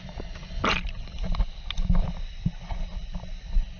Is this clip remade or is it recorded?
recorded